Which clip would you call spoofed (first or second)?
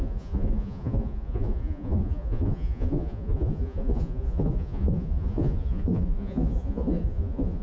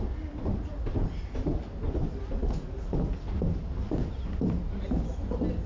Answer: first